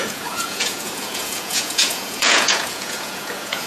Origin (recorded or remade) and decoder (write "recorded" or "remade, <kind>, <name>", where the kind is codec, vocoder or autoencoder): remade, vocoder, Vocos